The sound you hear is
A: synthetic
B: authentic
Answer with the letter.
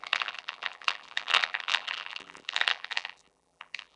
A